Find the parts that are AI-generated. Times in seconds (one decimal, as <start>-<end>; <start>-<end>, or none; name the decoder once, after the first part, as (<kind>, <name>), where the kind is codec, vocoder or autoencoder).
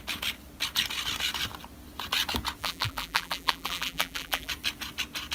2.6-4.5 (vocoder, BigVGAN v2)